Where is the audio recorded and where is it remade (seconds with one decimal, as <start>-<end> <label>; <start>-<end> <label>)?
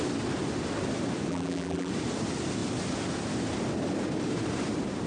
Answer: 0.0-1.3 recorded; 1.3-1.9 remade; 1.9-5.1 recorded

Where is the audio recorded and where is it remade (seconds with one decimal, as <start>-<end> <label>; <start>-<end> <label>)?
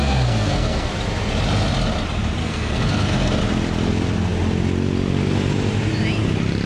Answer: 0.0-0.9 remade; 0.9-2.4 recorded; 2.4-3.4 remade; 3.4-6.7 recorded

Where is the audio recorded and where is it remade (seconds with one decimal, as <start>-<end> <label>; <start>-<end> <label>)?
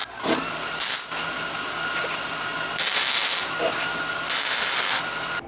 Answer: 0.0-5.5 recorded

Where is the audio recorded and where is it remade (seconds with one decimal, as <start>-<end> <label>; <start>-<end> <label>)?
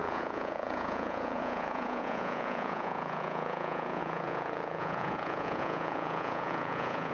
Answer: 0.0-7.1 remade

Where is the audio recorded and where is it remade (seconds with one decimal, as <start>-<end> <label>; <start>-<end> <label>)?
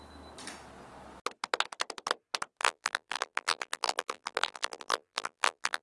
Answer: 0.0-2.6 recorded; 2.6-5.8 remade